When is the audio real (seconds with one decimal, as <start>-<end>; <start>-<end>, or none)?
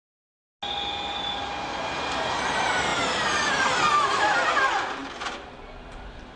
0.0-6.4